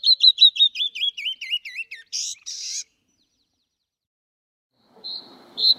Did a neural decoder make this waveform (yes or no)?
yes